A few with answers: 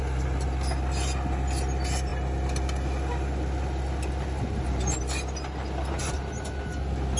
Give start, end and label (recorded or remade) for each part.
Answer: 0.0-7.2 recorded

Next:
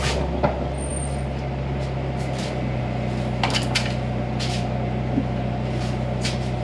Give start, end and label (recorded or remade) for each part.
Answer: 0.0-6.6 recorded

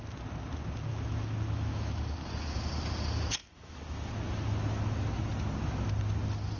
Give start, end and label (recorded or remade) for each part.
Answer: 0.0-0.9 recorded; 0.9-1.9 remade; 1.9-3.4 recorded; 3.4-4.1 remade; 4.1-6.6 recorded

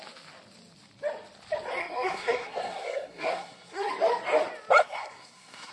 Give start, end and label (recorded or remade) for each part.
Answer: 0.0-1.8 recorded; 1.8-3.9 remade; 3.9-4.8 recorded; 4.8-5.7 remade

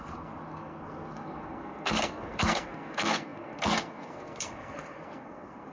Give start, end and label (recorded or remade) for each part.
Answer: 0.0-5.7 remade